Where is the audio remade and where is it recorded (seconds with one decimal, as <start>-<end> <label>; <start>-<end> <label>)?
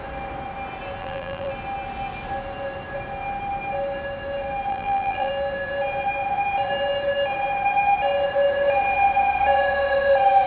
0.0-1.0 recorded; 1.0-1.5 remade; 1.5-4.7 recorded; 4.7-5.3 remade; 5.3-10.5 recorded